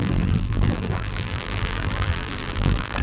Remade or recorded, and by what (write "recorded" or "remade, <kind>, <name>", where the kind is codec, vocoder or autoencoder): remade, vocoder, BigVGAN v2